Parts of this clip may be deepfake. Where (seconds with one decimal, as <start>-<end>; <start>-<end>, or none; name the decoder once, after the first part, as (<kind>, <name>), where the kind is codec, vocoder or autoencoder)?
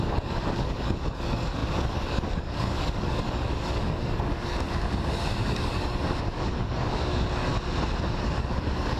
0.0-7.5 (codec, DAC); 8.2-9.0